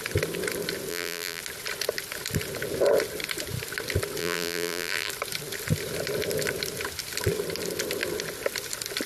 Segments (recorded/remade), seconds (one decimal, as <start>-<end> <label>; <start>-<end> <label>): 0.0-0.9 recorded; 0.9-1.4 remade; 1.4-4.2 recorded; 4.2-5.1 remade; 5.1-9.1 recorded